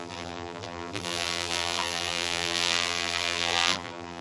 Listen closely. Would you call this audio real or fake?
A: fake